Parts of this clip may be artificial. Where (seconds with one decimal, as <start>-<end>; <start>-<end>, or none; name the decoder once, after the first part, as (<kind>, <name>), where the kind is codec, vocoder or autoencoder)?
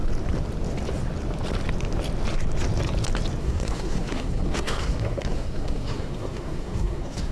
3.4-7.3 (codec, SNAC)